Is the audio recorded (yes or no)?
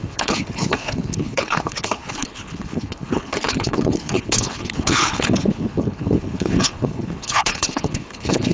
no